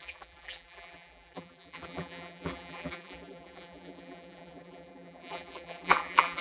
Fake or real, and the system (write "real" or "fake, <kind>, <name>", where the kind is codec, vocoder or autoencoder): fake, vocoder, BigVGAN v2